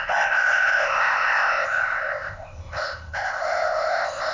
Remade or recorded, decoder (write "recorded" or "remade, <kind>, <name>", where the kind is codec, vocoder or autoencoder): remade, codec, ZipCodec